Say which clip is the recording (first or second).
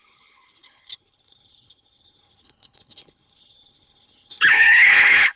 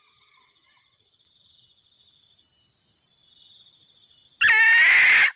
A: second